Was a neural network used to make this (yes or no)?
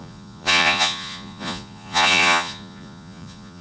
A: yes